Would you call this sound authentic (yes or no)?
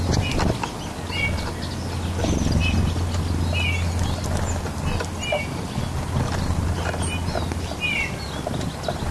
yes